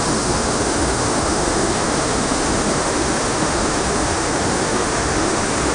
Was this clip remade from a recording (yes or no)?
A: yes